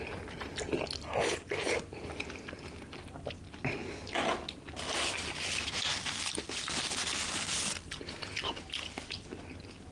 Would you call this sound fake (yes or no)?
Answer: no